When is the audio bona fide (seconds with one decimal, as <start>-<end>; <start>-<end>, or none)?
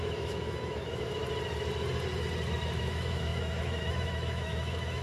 1.2-2.8